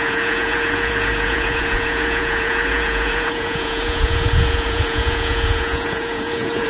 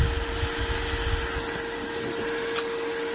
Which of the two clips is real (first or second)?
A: second